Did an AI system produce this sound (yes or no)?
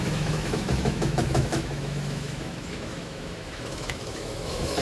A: yes